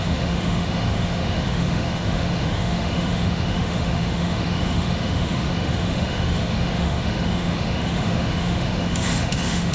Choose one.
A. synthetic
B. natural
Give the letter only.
A